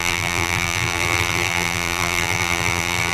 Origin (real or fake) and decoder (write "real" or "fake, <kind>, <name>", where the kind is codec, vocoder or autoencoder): fake, vocoder, BigVGAN v2